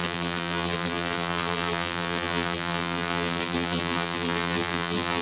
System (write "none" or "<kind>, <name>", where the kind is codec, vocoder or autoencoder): vocoder, BigVGAN v2